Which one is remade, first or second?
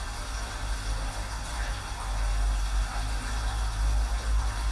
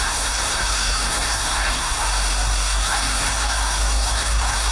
second